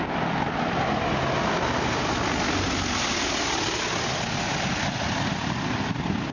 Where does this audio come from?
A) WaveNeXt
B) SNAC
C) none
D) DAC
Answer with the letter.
C